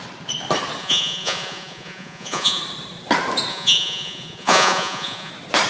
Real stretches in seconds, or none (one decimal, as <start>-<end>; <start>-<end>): 0.0-0.8; 2.6-3.5; 5.3-5.7